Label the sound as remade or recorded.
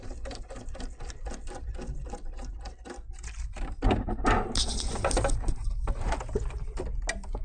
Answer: recorded